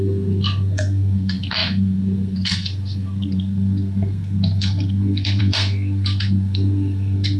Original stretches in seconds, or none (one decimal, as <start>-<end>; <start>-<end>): none